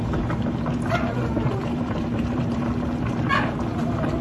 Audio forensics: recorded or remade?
remade